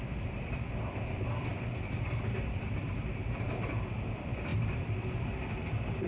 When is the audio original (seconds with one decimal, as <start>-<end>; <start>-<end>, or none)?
none